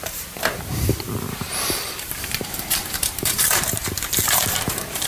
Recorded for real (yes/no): no